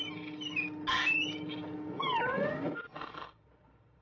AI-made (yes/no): no